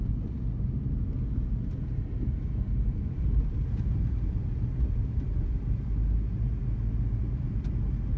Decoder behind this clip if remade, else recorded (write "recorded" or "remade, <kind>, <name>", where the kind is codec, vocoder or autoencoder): recorded